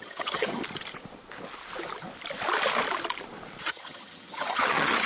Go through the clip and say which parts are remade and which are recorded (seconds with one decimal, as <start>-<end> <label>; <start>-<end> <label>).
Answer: 0.0-0.6 remade; 0.6-3.6 recorded; 3.6-5.1 remade